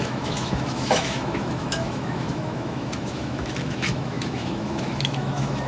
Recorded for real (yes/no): no